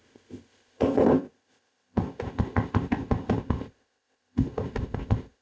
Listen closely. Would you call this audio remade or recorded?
remade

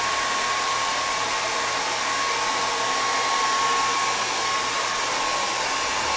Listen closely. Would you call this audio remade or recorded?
recorded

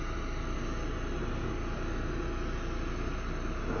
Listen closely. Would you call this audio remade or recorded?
recorded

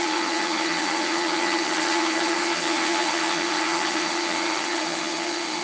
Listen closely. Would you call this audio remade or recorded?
remade